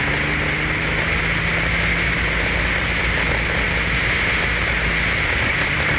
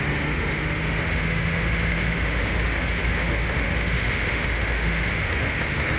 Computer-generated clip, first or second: second